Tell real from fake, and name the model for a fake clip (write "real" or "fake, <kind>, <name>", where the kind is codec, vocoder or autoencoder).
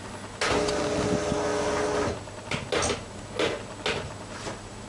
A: real